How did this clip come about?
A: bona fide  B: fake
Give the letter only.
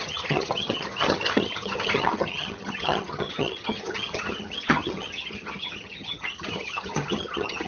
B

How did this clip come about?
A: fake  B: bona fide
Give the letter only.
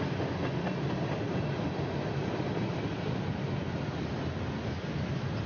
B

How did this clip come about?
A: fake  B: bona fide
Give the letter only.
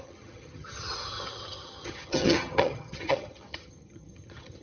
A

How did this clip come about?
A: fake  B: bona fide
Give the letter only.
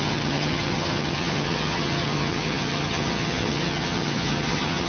A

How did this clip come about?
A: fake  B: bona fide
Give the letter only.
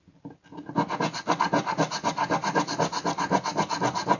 B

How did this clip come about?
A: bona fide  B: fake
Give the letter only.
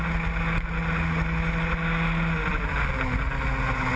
A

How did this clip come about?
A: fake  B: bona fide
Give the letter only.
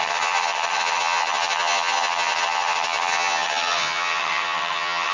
A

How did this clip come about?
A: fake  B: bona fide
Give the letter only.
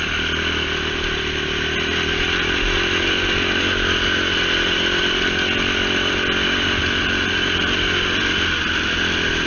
B